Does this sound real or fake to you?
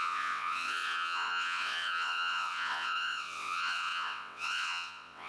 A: fake